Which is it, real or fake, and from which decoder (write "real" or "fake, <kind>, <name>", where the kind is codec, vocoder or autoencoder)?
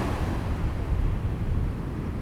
real